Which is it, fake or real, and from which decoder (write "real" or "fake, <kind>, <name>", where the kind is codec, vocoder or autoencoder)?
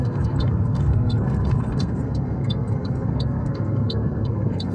fake, codec, SNAC